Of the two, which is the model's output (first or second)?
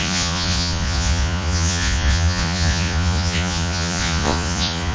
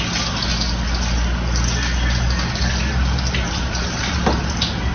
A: first